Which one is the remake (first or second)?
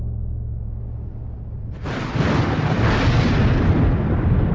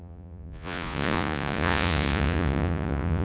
second